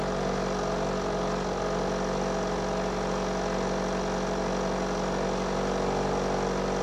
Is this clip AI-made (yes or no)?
no